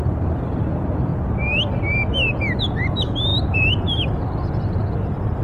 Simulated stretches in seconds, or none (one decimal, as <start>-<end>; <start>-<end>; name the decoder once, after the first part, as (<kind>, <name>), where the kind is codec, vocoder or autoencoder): 0.0-1.1 (vocoder, BigVGAN v2); 2.6-5.4